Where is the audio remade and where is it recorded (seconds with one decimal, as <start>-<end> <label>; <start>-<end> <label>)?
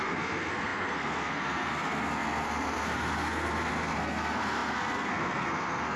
0.0-6.0 remade